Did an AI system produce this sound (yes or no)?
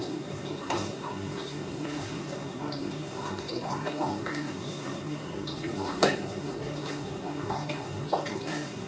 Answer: yes